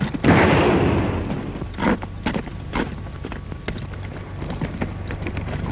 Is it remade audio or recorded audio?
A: recorded